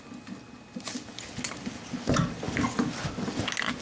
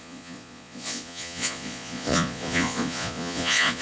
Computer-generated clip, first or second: second